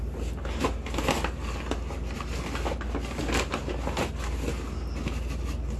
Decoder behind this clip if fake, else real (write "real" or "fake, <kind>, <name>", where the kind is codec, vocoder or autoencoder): real